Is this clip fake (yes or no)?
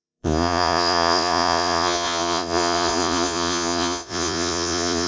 yes